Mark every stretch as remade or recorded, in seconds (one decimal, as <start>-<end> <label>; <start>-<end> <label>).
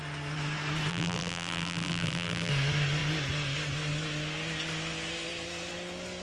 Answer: 0.0-0.9 recorded; 0.9-2.5 remade; 2.5-6.2 recorded